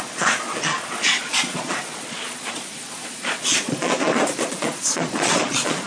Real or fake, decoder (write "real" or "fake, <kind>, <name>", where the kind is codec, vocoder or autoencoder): fake, vocoder, Vocos